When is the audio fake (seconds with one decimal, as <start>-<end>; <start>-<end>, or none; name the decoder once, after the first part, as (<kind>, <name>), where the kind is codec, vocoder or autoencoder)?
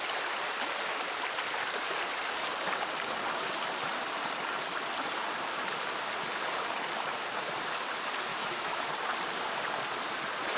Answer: 8.3-8.8 (autoencoder, DAC-VAE)